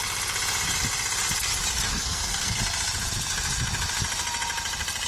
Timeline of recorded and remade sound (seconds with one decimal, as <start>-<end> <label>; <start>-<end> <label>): 0.0-1.9 recorded; 1.9-2.6 remade; 2.6-5.1 recorded